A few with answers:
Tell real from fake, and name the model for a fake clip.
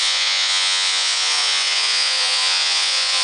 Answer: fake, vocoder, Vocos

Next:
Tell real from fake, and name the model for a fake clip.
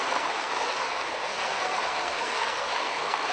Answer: fake, codec, SNAC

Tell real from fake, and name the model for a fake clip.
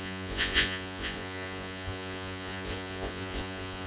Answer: fake, vocoder, Vocos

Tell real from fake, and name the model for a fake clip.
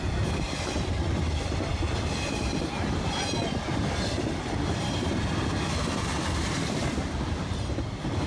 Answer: fake, vocoder, BigVGAN v2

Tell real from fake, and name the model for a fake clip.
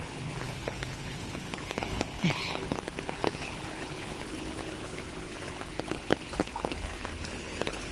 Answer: fake, codec, HILCodec